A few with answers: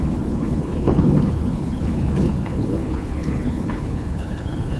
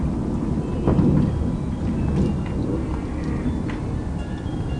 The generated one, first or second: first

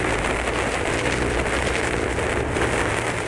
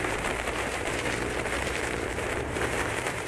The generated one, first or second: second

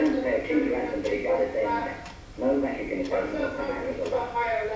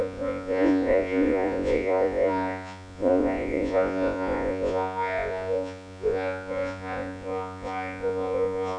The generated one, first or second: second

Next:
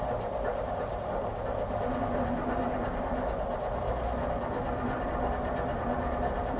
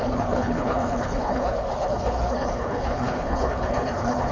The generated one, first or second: second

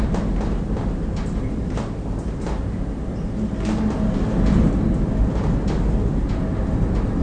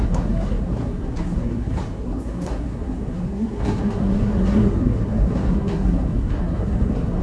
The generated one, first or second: second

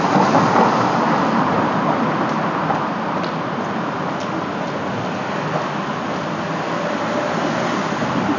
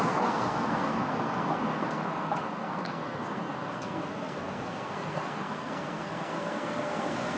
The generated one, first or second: second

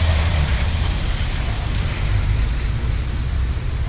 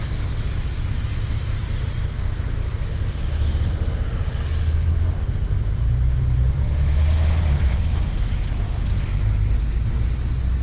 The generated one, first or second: first